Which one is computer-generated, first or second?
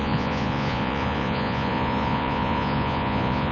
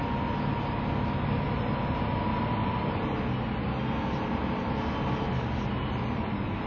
first